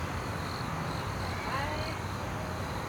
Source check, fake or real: real